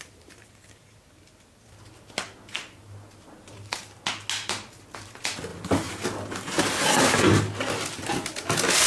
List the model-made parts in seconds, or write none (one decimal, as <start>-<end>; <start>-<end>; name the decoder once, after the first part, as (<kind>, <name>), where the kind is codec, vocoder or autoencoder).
none